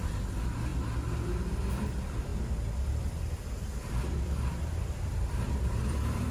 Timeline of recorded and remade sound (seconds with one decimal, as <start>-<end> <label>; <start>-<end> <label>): 0.0-0.7 remade; 0.7-1.7 recorded; 1.7-6.3 remade